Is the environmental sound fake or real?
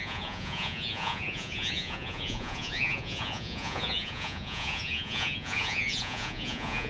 fake